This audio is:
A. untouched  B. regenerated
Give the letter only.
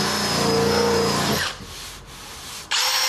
A